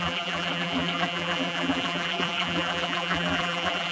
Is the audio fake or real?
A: fake